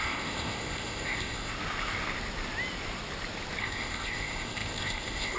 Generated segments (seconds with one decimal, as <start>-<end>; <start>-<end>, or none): 0.0-1.5; 3.6-5.4